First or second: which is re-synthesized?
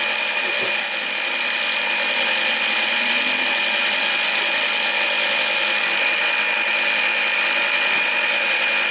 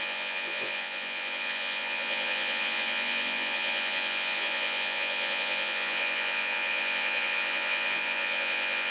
second